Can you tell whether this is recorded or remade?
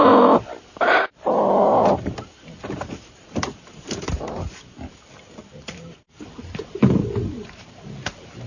remade